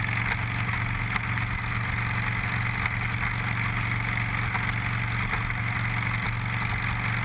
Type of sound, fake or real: real